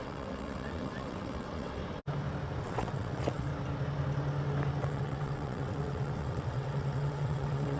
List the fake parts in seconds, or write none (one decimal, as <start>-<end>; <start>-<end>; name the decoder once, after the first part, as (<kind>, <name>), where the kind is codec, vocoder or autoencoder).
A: 0.0-1.8 (vocoder, WaveNeXt); 2.6-3.5; 4.8-7.8